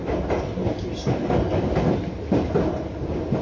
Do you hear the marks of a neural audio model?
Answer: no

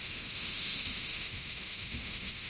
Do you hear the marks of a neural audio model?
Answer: yes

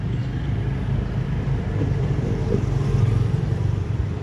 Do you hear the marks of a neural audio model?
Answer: yes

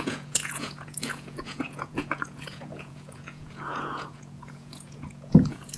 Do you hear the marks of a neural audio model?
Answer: yes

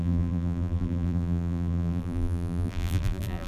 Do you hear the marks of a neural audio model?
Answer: yes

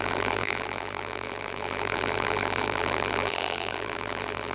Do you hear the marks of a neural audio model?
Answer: yes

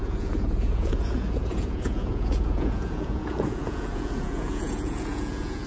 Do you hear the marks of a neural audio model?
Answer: yes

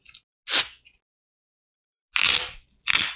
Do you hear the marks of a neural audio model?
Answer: no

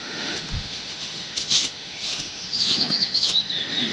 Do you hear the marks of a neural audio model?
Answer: yes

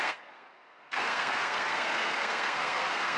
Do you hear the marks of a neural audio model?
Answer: yes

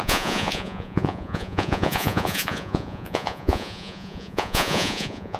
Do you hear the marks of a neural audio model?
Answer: yes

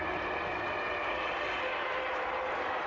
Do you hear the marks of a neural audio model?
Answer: no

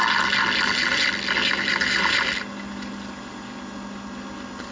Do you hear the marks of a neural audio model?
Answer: no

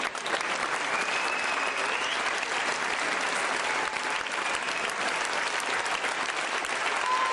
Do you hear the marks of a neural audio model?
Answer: no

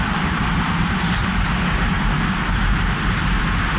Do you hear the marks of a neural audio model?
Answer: no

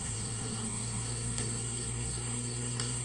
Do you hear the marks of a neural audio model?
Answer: yes